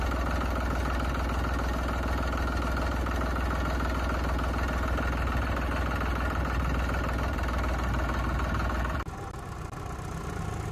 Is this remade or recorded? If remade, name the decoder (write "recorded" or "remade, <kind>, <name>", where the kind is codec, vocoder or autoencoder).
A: recorded